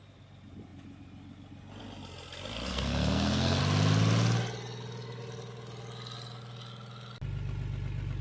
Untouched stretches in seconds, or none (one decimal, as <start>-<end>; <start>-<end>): 0.0-2.7; 3.6-8.2